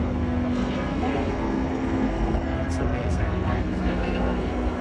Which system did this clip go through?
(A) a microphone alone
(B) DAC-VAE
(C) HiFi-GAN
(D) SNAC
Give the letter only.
D